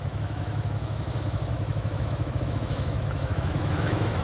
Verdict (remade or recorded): remade